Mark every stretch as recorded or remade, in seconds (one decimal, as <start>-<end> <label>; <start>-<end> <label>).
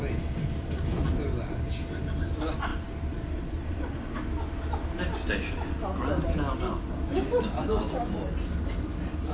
0.0-9.3 recorded